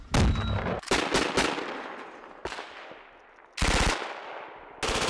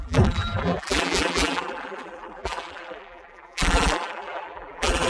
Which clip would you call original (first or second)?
first